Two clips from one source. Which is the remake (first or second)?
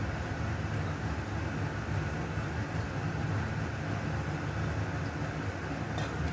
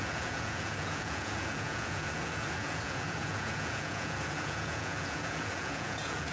second